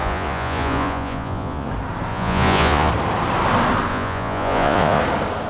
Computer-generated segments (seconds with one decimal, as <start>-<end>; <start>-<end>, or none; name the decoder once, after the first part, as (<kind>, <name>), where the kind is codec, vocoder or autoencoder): 0.0-1.7 (vocoder, Vocos); 2.1-2.9; 3.9-5.0